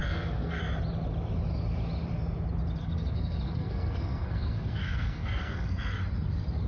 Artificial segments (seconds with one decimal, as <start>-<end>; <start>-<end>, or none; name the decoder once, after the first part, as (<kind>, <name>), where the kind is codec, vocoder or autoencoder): 0.0-0.6 (codec, SNAC); 2.8-6.0